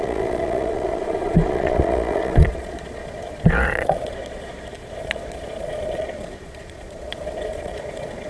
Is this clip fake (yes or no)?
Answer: yes